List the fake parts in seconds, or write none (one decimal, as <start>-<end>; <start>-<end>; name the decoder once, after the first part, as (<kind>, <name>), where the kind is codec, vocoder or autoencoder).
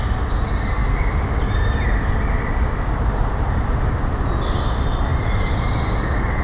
none